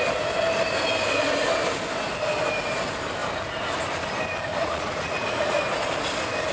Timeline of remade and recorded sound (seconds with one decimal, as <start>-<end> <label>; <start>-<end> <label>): 0.0-4.5 recorded; 4.5-5.6 remade; 5.6-6.5 recorded